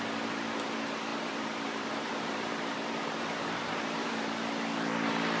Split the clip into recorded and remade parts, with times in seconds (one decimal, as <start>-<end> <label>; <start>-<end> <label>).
0.0-1.1 recorded; 1.1-4.3 remade; 4.3-5.4 recorded